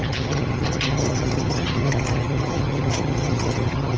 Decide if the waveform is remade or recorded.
remade